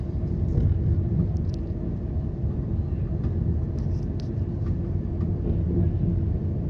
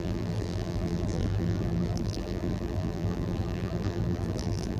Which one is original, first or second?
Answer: first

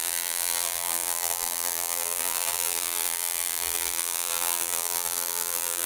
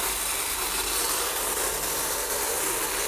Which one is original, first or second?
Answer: second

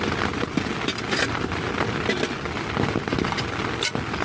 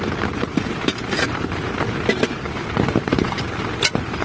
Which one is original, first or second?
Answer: first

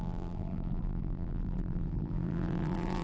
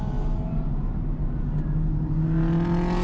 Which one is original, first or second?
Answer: second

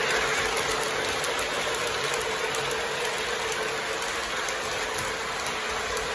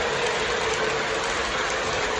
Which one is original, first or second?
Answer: first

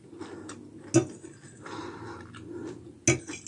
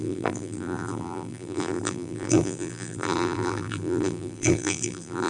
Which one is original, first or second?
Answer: first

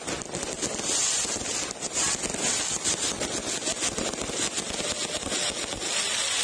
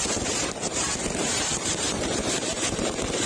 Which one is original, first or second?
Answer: first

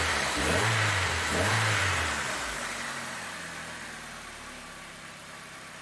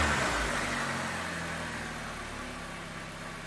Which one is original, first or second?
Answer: second